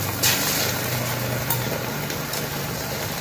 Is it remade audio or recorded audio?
recorded